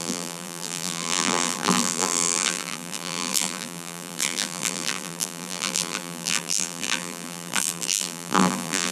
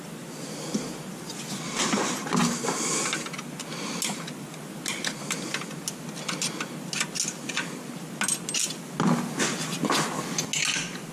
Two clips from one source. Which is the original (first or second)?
second